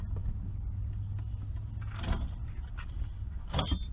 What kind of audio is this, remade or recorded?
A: recorded